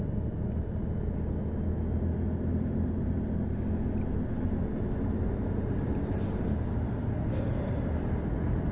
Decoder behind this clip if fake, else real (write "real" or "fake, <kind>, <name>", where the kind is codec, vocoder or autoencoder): real